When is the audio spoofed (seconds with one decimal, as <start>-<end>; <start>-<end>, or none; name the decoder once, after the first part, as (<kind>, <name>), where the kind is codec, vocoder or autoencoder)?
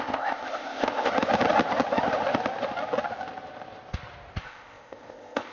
0.0-1.1 (codec, ZipCodec); 4.4-5.5